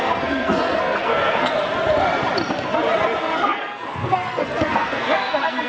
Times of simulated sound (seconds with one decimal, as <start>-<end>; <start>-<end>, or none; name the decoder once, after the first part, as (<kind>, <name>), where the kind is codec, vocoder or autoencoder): 0.0-1.5 (codec, SNAC); 3.2-5.7